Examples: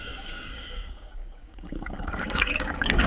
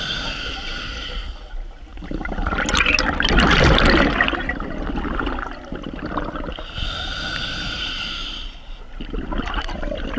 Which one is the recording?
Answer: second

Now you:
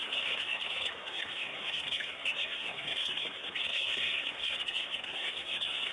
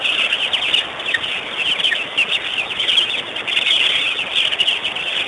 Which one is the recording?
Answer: second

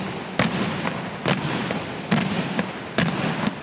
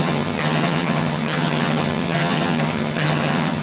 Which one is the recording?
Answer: first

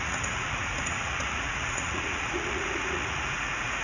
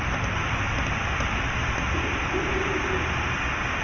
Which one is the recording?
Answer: second